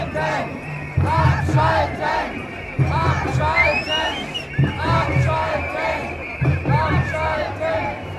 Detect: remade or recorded remade